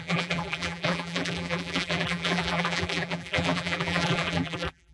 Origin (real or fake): fake